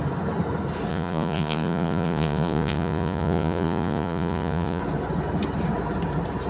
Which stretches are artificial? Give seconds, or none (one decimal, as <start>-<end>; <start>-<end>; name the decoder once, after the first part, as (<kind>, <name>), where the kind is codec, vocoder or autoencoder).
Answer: 0.9-4.8 (vocoder, Vocos)